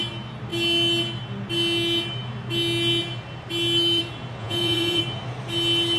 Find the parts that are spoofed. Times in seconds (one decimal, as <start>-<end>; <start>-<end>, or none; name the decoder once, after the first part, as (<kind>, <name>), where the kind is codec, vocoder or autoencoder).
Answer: 4.4-5.0 (vocoder, Vocos)